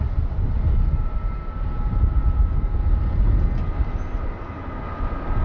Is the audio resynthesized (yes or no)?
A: no